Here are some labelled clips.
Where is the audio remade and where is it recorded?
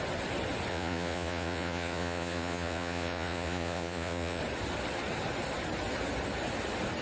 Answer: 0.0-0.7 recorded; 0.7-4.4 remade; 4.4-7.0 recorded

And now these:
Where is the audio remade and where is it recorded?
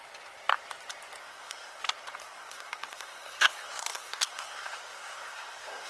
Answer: 0.0-1.2 recorded; 1.2-1.8 remade; 1.8-2.2 recorded; 2.2-5.9 remade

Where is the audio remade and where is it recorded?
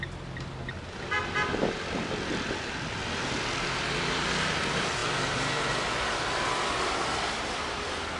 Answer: 0.0-8.2 recorded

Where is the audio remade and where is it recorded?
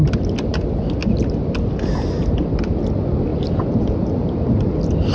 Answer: 0.0-5.1 recorded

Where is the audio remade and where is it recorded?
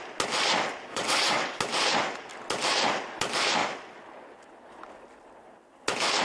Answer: 0.0-0.9 recorded; 0.9-1.6 remade; 1.6-6.2 recorded